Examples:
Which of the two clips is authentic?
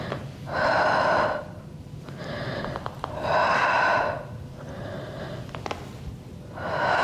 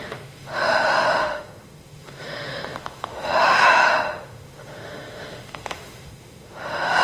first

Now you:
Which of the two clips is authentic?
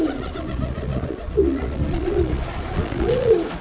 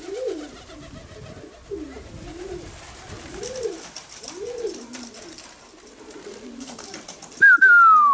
second